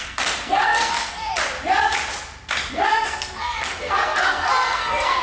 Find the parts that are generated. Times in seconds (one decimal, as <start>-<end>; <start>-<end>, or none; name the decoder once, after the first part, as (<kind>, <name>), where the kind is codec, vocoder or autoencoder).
0.0-1.3 (codec, SNAC); 2.7-5.2

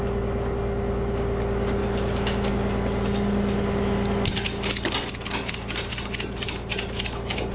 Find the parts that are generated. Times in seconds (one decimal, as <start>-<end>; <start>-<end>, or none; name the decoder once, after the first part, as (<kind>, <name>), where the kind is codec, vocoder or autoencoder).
none

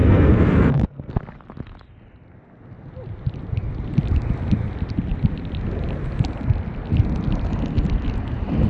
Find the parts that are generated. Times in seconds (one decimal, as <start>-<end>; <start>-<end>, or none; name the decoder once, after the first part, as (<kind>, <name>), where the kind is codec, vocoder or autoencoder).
0.0-1.2 (codec, SNAC)

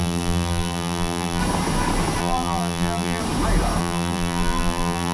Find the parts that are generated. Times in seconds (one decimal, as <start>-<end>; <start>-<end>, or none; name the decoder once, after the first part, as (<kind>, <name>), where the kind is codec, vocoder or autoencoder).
0.0-1.4 (vocoder, BigVGAN v2); 2.2-3.2; 3.8-5.1

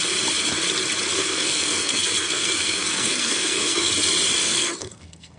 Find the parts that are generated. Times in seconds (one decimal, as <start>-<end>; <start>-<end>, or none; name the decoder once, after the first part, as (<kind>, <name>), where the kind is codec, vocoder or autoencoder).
1.1-3.9 (codec, SNAC); 4.4-5.4

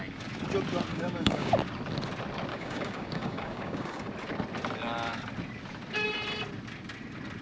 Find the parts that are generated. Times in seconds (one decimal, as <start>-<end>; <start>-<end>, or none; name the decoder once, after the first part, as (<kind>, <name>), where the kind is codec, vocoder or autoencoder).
0.9-1.5 (codec, DAC); 2.5-4.1

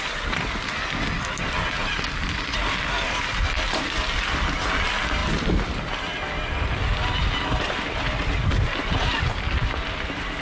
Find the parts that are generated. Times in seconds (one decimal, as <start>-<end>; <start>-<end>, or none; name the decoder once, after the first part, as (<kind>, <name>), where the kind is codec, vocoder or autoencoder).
none